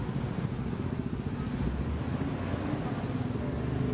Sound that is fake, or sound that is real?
real